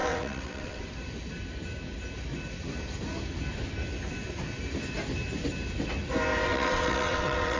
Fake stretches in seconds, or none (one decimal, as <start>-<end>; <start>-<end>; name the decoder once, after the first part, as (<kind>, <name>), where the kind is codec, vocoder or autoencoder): 0.0-0.8 (vocoder, WaveNeXt); 6.5-7.6